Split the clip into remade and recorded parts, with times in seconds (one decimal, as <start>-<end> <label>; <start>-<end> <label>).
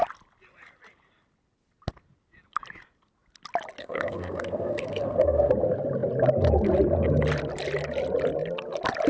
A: 0.0-3.8 recorded; 3.8-5.5 remade; 5.5-9.1 recorded